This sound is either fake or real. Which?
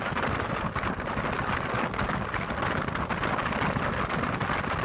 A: real